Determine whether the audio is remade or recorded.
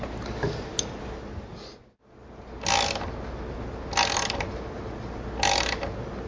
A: recorded